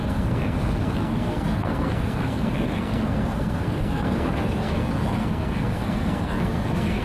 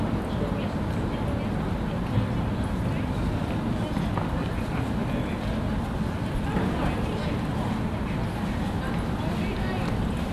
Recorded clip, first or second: second